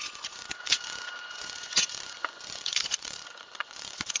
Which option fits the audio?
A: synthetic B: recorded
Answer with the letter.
A